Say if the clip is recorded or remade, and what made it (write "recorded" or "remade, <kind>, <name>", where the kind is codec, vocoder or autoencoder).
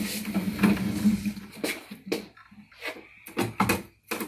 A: recorded